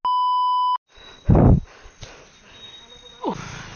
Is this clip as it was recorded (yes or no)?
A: yes